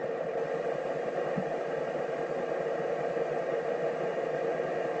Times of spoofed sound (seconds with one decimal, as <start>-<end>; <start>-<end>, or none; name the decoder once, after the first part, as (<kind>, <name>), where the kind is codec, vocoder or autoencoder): 0.0-0.7 (vocoder, BigVGAN v2)